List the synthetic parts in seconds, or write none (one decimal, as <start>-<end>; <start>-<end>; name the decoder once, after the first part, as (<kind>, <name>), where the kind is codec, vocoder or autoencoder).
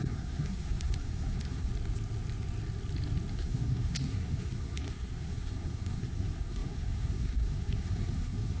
0.0-1.7 (codec, SNAC); 3.3-8.6